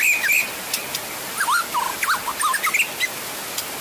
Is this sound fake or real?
real